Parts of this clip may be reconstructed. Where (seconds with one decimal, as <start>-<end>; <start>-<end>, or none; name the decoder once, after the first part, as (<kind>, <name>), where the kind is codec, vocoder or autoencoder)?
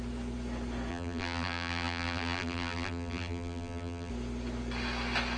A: 0.9-4.1 (vocoder, BigVGAN v2)